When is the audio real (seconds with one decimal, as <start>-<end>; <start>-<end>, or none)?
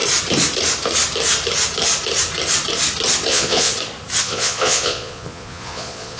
0.0-3.3; 3.7-4.2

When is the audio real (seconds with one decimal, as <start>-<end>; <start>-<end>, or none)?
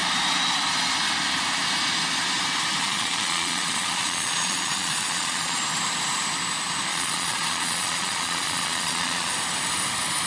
0.0-2.8; 5.6-6.9; 9.3-10.3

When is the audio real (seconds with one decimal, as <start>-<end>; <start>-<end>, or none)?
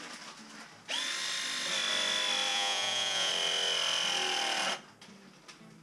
0.0-2.5; 3.3-5.8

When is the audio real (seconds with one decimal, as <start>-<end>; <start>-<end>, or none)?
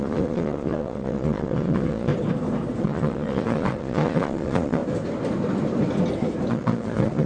2.1-2.8; 4.8-6.5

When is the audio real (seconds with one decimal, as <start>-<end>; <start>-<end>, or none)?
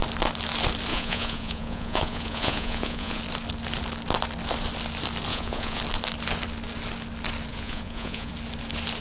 0.0-0.9; 3.2-5.3; 5.8-7.5; 8.3-9.0